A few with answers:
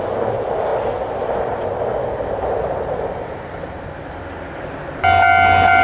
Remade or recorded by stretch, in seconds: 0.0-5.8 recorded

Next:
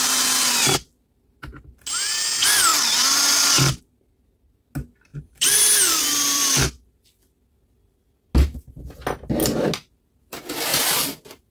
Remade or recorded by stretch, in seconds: 0.0-5.1 recorded; 5.1-5.6 remade; 5.6-10.7 recorded; 10.7-11.5 remade

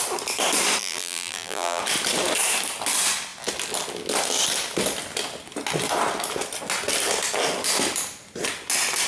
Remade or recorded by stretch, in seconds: 0.0-0.8 recorded; 0.8-1.8 remade; 1.8-9.1 recorded

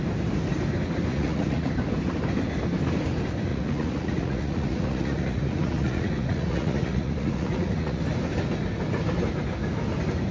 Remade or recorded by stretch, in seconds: 0.0-1.1 recorded; 1.1-1.7 remade; 1.7-3.5 recorded; 3.5-8.0 remade; 8.0-10.3 recorded

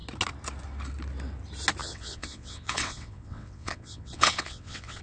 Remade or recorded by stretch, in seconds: 0.0-1.8 recorded; 1.8-5.0 remade

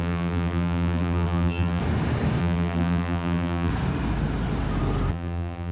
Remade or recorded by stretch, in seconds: 0.0-1.8 remade; 1.8-2.4 recorded; 2.4-3.7 remade; 3.7-5.1 recorded; 5.1-5.7 remade

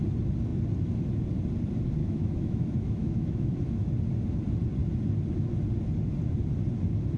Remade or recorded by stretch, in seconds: 0.0-2.0 recorded; 2.0-3.9 remade; 3.9-7.2 recorded